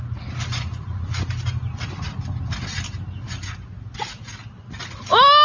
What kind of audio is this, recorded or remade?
recorded